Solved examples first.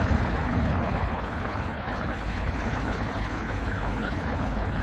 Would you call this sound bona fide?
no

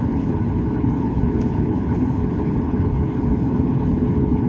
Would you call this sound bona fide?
no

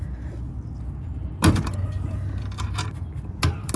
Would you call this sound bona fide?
yes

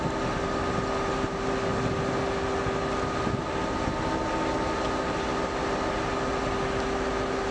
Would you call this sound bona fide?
yes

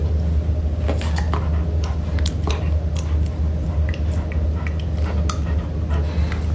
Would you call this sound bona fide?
yes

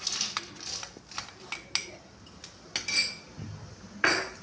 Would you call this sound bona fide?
yes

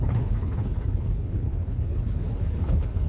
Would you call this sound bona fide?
no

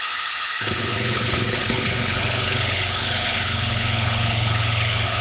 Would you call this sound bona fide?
no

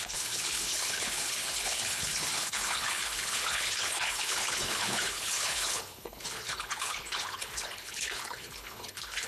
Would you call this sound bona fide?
no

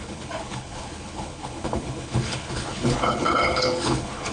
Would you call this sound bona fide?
no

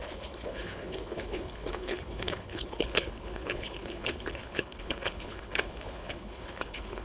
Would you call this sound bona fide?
no